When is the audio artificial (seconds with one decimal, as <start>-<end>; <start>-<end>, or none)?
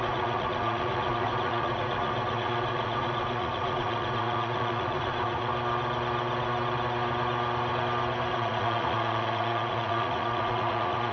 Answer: 0.0-5.5; 8.3-11.1